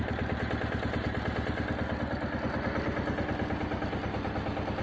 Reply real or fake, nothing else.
real